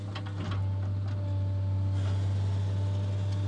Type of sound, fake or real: real